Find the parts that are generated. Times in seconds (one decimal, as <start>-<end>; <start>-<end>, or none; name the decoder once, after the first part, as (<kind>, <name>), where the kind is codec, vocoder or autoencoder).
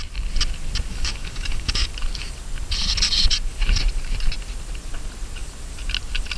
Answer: 0.9-1.9 (codec, DAC)